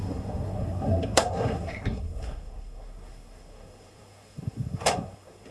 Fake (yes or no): yes